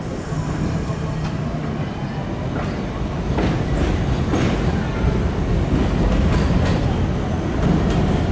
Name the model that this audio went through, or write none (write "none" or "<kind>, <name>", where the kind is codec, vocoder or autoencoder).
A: none